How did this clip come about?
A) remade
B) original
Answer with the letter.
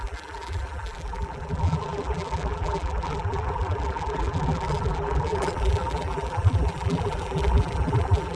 A